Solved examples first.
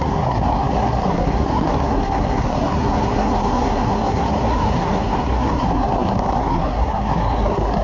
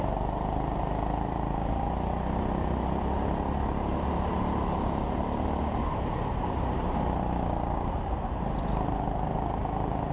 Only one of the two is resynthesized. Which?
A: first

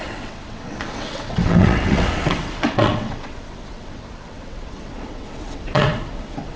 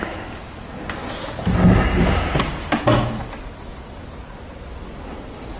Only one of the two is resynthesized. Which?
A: first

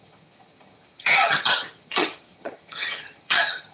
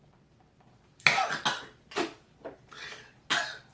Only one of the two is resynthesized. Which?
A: first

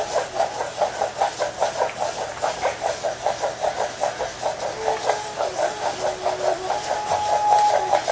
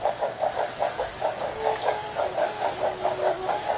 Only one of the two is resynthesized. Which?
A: second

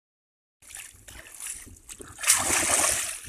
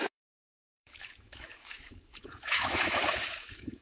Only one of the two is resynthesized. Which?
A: second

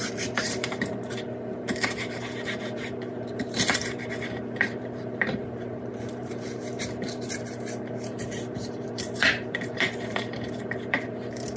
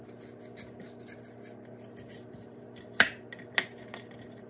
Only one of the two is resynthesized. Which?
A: first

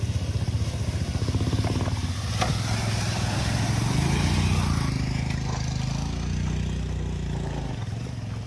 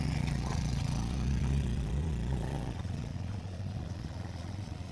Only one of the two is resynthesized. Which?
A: second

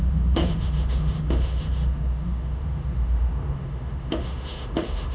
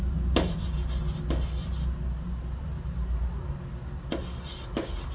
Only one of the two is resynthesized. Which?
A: first